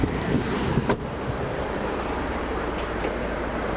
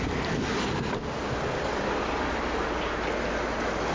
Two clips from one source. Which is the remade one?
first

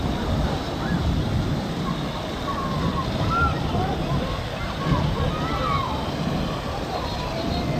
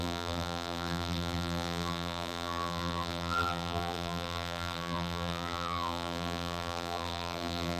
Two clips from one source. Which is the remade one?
second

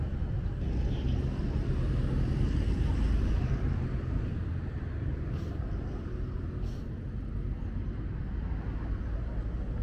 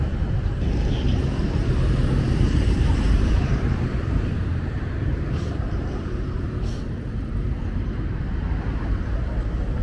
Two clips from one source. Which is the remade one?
second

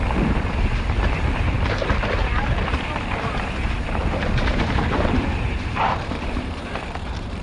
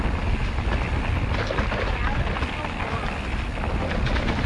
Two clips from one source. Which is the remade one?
first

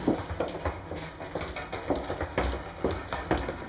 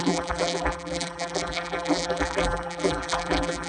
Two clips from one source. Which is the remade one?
second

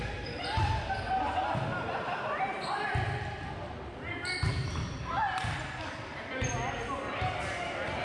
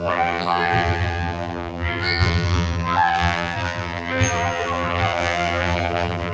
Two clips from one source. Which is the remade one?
second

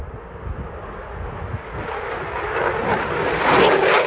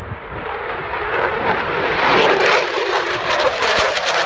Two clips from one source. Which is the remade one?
second